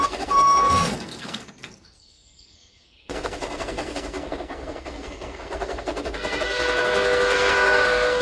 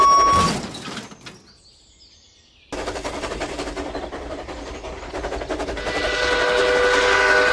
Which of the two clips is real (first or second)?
second